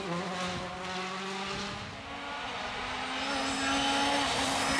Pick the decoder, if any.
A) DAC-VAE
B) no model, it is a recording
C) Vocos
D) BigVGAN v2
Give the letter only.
B